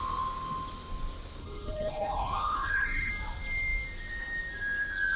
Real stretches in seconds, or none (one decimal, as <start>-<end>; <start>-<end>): 0.0-1.4; 3.1-5.2